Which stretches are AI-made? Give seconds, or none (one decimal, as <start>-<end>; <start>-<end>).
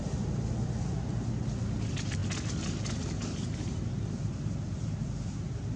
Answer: none